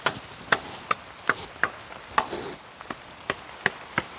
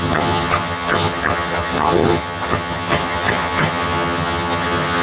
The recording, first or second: first